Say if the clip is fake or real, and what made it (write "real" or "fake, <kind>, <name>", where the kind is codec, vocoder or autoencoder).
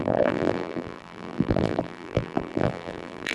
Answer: fake, vocoder, BigVGAN v2